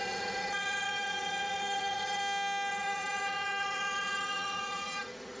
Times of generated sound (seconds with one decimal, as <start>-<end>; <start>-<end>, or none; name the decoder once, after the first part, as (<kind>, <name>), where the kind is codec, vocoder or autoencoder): 0.0-2.2 (vocoder, Vocos); 2.7-5.4